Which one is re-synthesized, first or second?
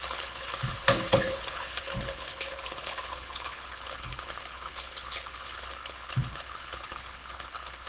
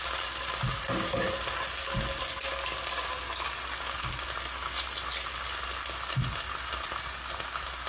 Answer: first